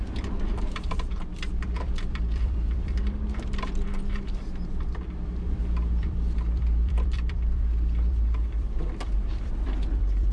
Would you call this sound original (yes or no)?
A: no